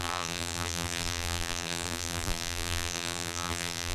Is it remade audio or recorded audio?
remade